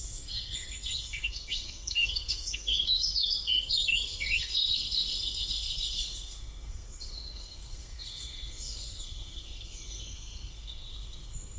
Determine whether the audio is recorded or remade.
remade